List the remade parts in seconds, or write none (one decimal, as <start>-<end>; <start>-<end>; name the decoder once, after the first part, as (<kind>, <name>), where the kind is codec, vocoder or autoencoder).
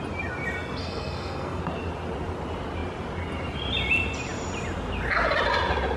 0.8-1.6 (codec, SNAC)